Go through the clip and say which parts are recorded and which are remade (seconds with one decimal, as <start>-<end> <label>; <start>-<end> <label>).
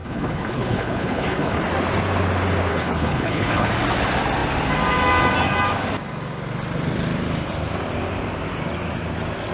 0.0-1.6 remade; 1.6-2.7 recorded; 2.7-3.7 remade; 3.7-9.5 recorded